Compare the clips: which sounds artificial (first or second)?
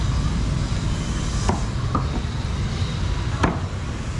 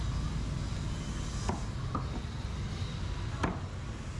first